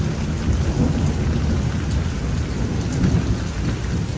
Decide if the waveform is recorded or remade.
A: recorded